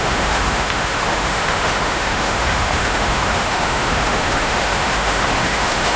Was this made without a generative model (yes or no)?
no